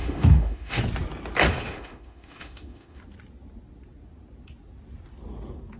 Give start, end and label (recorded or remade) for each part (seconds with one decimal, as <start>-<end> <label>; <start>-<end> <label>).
0.0-0.8 remade; 0.8-1.5 recorded; 1.5-3.0 remade; 3.0-5.8 recorded